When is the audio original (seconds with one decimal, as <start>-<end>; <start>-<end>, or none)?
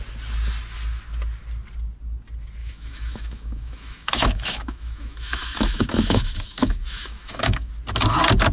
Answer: 0.0-2.6; 7.7-8.5